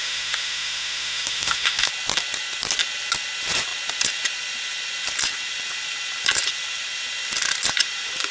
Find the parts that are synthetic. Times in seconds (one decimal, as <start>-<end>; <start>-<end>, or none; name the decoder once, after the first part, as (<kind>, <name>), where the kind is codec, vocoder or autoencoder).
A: 0.0-1.9 (autoencoder, DAC-VAE)